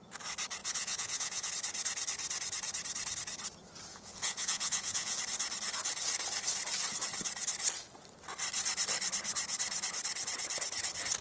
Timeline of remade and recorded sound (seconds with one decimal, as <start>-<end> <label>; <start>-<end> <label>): 0.0-0.6 recorded; 0.6-1.5 remade; 1.5-3.9 recorded; 3.9-5.2 remade; 5.2-11.2 recorded